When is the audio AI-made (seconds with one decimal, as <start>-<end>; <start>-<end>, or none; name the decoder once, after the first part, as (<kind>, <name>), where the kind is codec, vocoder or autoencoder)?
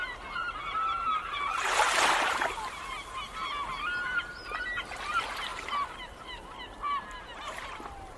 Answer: none